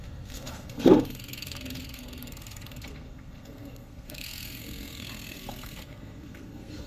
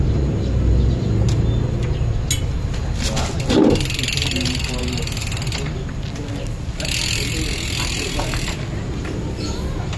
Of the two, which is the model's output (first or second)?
first